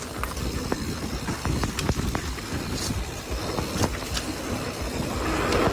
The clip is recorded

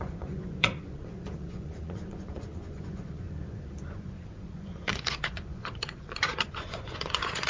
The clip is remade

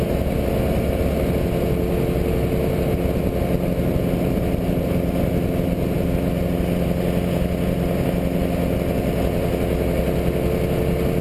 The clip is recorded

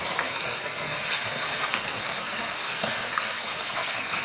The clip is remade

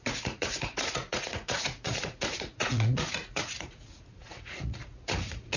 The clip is remade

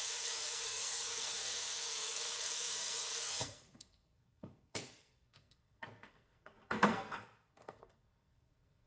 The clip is remade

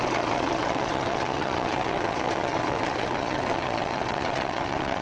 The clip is remade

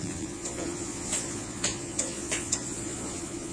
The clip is remade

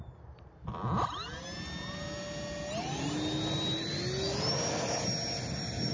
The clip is recorded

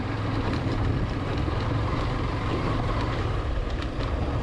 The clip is remade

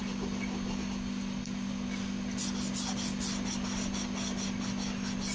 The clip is recorded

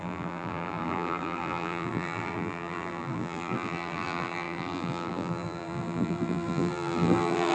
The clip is remade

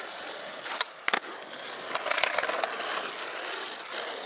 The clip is recorded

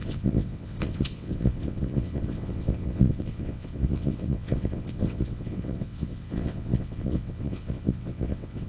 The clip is remade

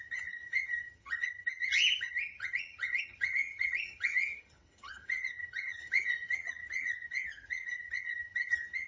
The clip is remade